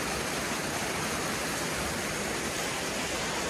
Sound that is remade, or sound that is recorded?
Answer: recorded